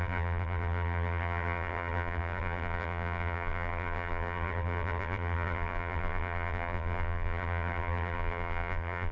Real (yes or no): no